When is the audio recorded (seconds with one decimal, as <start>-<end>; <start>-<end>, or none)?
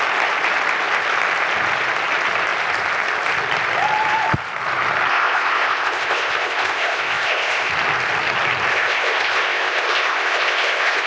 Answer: 0.0-5.1; 7.7-8.7